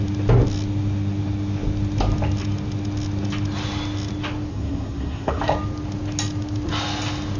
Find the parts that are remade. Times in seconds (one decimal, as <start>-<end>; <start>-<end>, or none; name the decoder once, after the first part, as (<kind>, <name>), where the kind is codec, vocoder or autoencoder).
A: 4.5-5.4 (codec, SNAC)